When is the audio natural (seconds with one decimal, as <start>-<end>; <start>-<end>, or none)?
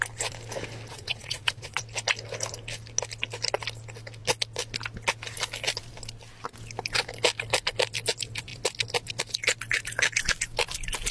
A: 0.0-0.9; 1.8-11.1